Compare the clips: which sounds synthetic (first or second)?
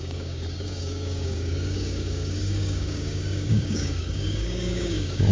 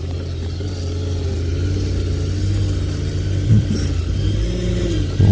first